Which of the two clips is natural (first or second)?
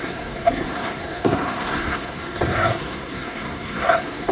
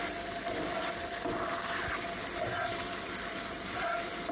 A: second